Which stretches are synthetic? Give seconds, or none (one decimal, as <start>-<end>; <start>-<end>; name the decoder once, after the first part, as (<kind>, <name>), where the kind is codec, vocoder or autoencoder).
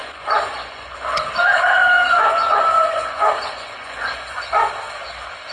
0.0-0.9 (vocoder, Vocos); 1.8-4.4